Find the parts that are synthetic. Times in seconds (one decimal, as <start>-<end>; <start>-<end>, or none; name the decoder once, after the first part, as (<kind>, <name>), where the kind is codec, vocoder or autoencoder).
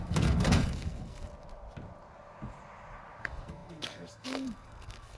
0.0-1.3 (codec, SNAC); 3.2-5.2